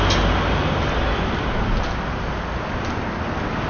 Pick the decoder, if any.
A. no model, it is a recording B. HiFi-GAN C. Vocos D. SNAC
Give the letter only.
A